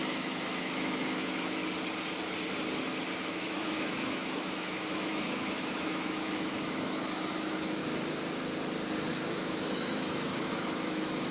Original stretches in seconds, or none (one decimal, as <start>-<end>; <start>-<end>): 1.6-3.3; 7.8-9.1